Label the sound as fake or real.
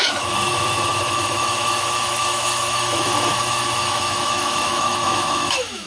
fake